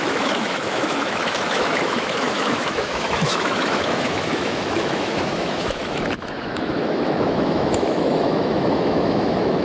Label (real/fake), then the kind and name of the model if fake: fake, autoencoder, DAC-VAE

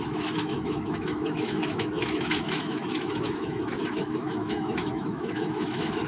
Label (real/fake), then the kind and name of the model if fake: fake, autoencoder, DAC-VAE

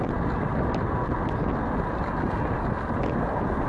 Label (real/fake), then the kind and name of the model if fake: real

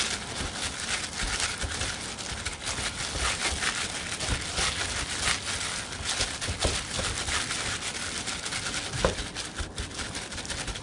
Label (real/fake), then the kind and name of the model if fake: real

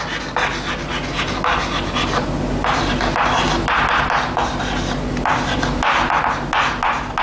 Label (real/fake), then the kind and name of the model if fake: real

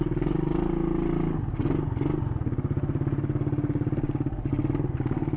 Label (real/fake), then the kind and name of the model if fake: real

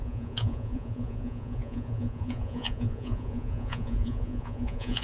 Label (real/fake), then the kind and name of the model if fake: fake, vocoder, Vocos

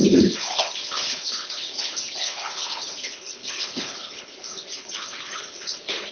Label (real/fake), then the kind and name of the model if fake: fake, codec, HILCodec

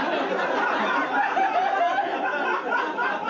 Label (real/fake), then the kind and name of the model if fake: real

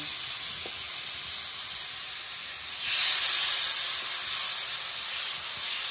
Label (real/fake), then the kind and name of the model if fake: real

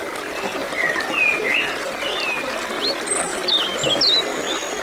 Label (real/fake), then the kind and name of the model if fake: real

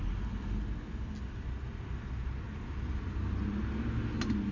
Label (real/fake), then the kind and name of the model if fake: real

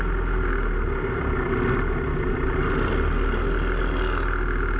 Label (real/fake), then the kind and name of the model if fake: real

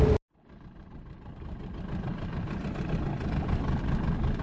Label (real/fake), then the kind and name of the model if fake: real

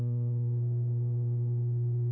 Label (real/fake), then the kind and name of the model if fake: fake, autoencoder, DAC-VAE